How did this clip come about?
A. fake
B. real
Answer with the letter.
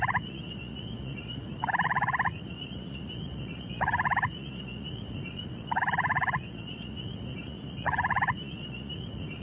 A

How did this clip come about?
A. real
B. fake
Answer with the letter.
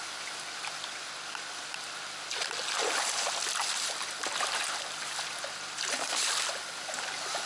A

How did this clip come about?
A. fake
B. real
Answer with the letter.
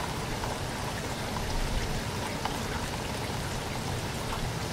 B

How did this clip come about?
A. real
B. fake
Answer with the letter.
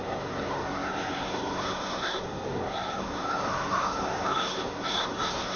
B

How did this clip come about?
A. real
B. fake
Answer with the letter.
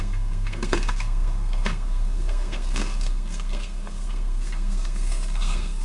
B